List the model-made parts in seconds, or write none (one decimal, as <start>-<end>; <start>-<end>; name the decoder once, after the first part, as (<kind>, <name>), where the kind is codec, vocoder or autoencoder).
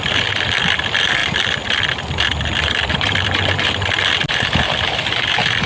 0.0-5.7 (vocoder, BigVGAN v2)